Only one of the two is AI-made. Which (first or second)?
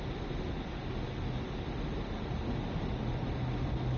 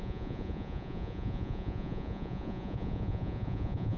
second